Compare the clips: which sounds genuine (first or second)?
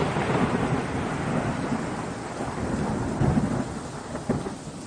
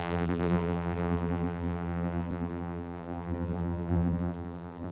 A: first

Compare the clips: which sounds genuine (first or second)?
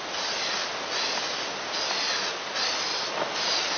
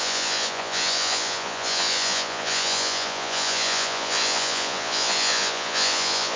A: first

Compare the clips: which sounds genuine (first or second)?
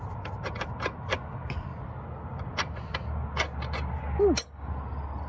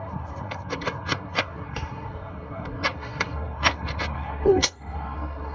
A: first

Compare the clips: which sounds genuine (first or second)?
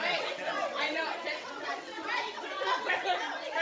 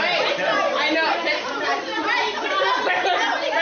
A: second